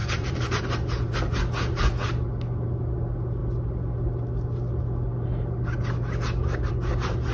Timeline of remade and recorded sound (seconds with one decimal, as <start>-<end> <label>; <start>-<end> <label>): 0.0-0.6 remade; 0.6-7.3 recorded